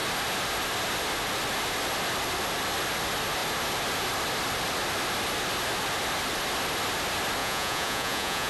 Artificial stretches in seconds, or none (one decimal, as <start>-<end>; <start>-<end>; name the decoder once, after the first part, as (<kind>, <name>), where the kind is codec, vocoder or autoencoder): 7.4-8.5 (vocoder, Vocos)